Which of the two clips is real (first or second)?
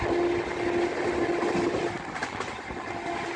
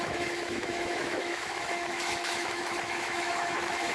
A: first